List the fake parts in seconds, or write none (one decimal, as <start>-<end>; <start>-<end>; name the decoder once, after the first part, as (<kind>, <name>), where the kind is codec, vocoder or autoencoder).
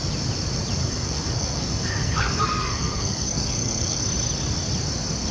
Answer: 0.8-4.0 (codec, SNAC)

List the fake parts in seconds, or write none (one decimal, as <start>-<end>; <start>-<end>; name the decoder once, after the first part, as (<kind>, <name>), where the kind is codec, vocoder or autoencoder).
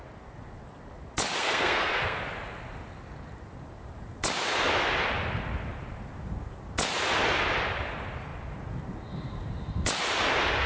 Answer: 1.4-2.2 (codec, SNAC)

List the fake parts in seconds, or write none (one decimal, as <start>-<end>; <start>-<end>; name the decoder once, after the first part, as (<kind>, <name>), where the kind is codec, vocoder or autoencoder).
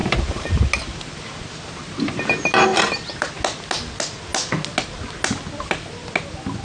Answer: 0.0-0.6 (vocoder, BigVGAN v2); 2.7-3.3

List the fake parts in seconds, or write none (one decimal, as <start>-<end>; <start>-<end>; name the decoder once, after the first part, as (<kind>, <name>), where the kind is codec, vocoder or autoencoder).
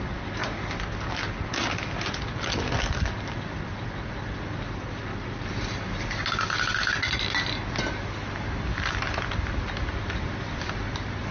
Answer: 0.0-0.4 (vocoder, BigVGAN v2); 4.6-5.1; 10.2-11.3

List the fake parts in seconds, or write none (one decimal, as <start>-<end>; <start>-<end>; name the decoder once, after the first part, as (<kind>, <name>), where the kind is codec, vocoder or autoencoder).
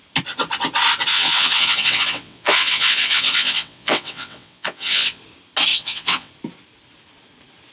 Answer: 1.1-5.2 (vocoder, WaveNeXt); 5.7-6.3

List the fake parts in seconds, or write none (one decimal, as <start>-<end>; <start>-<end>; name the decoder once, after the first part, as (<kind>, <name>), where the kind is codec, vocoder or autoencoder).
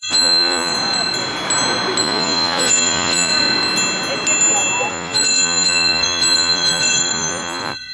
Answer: 0.0-0.7 (vocoder, Vocos); 2.0-3.3; 4.9-7.9